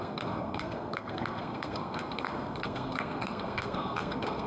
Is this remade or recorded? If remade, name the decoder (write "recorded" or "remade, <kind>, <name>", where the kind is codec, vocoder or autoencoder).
remade, codec, SNAC